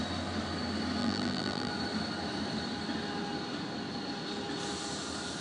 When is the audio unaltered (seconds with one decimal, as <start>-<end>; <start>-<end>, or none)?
0.0-1.0; 1.7-5.4